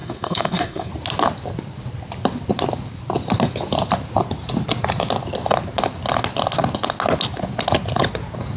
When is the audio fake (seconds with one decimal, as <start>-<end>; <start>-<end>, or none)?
0.0-0.9